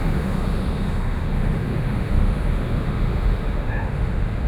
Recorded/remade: remade